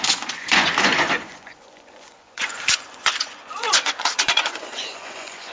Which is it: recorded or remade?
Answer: remade